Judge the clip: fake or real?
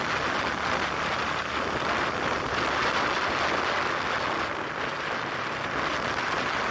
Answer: real